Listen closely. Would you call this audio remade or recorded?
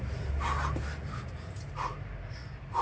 recorded